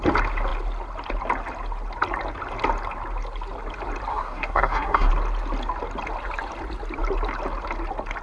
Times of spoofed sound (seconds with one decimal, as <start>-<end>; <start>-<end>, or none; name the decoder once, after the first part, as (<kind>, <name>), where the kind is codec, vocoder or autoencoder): 4.1-5.1 (codec, SNAC)

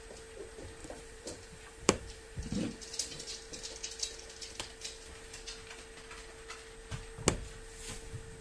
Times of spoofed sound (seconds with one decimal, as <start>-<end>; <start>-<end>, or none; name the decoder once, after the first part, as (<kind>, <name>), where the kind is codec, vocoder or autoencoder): 0.8-3.3 (vocoder, BigVGAN v2)